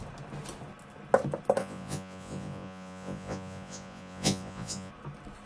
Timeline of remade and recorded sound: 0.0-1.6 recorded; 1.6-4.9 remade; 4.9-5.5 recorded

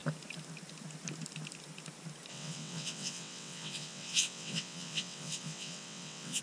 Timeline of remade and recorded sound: 0.0-2.3 recorded; 2.3-6.4 remade

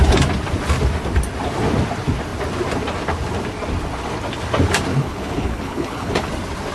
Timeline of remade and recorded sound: 0.0-4.9 recorded; 4.9-6.3 remade; 6.3-6.7 recorded

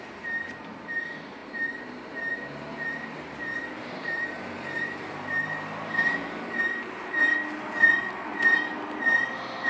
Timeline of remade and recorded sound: 0.0-9.7 recorded

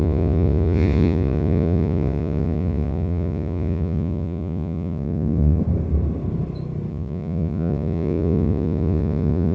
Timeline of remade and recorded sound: 0.0-5.6 remade; 5.6-6.9 recorded; 6.9-9.5 remade

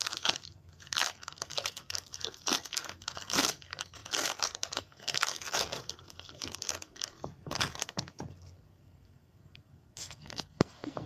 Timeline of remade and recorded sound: 0.0-11.1 remade

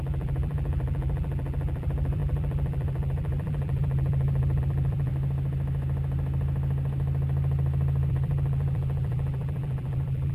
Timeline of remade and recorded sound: 0.0-5.1 remade; 5.1-8.1 recorded; 8.1-10.3 remade